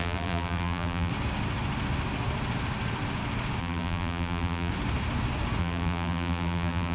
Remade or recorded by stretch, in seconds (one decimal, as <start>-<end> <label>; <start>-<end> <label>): 0.0-1.1 remade; 1.1-3.6 recorded; 3.6-4.7 remade; 4.7-5.6 recorded; 5.6-6.9 remade